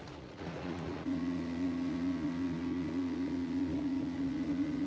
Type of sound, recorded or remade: remade